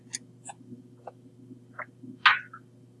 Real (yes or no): yes